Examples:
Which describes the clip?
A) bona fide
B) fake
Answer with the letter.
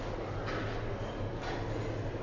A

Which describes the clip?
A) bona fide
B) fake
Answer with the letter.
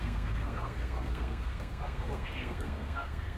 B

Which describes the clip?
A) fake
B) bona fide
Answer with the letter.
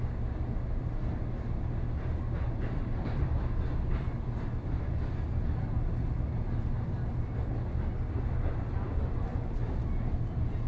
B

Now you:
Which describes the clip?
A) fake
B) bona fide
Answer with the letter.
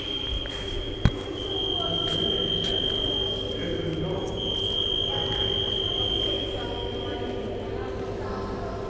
B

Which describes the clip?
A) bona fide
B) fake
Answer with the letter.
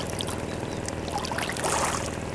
A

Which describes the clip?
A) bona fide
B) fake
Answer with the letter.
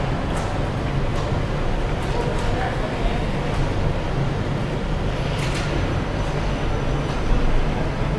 A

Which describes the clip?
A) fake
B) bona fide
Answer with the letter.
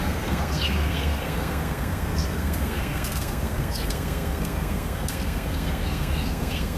A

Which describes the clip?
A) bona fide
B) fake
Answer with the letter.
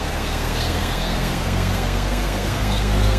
B